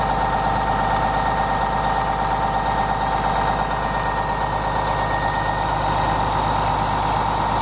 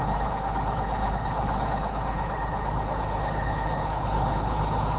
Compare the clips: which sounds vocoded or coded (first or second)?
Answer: second